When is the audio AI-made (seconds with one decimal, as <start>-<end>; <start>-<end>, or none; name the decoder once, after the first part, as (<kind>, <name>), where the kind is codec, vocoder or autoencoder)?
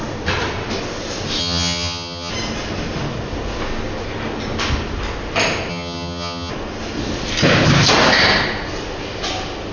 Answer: 1.4-2.3 (vocoder, HiFi-GAN); 5.7-6.5